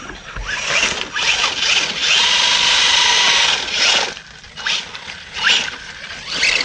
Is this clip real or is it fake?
real